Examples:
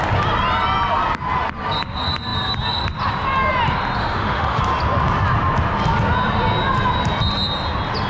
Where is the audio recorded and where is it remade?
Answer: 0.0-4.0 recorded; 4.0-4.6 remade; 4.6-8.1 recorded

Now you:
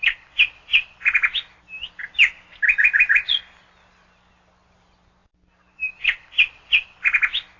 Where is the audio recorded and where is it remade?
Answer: 0.0-7.6 recorded

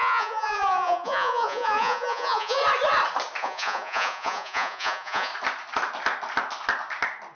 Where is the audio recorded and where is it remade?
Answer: 0.0-2.6 remade; 2.6-3.4 recorded; 3.4-5.3 remade; 5.3-7.4 recorded